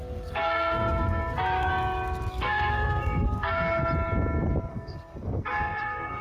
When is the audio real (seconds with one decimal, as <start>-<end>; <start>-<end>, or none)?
1.7-2.3; 3.8-4.7